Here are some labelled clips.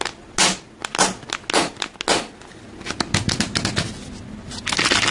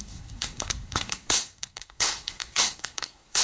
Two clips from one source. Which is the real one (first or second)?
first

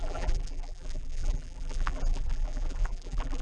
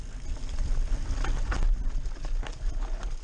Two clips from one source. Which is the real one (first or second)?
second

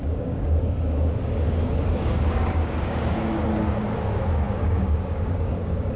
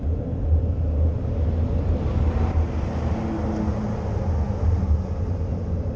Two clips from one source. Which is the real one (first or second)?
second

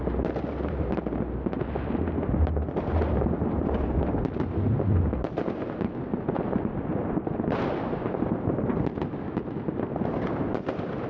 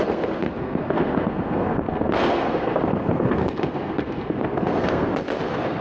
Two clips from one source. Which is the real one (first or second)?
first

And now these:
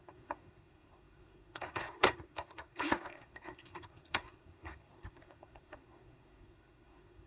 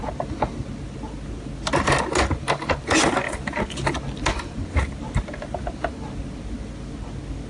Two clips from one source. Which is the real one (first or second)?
second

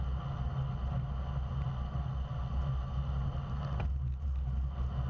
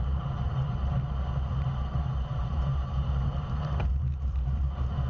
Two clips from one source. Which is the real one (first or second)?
first